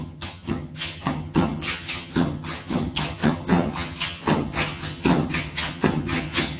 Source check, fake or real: fake